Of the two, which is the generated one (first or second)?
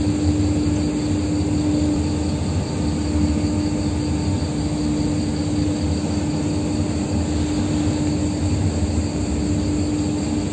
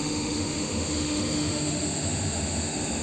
second